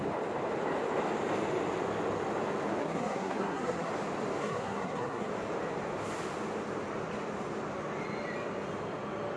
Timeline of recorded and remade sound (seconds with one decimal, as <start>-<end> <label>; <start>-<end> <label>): 0.0-2.8 recorded; 2.8-3.9 remade; 3.9-4.4 recorded; 4.4-5.3 remade; 5.3-9.4 recorded